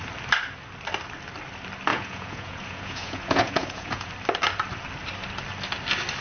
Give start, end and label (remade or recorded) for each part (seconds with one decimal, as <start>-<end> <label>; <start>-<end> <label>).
0.0-1.9 recorded; 1.9-4.1 remade; 4.1-6.2 recorded